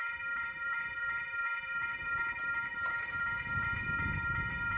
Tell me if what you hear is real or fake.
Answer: fake